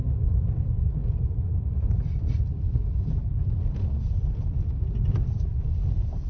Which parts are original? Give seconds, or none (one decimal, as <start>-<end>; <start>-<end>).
none